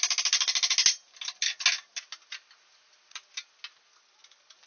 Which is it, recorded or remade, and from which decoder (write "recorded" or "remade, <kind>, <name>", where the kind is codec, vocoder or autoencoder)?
recorded